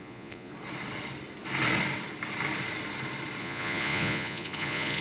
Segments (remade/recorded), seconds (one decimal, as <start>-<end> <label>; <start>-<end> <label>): 0.0-0.5 remade; 0.5-3.4 recorded; 3.4-5.0 remade